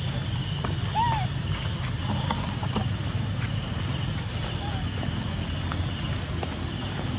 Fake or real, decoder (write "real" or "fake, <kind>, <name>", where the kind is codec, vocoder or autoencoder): real